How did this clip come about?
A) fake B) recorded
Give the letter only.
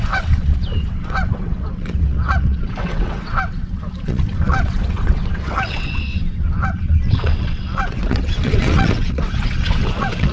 A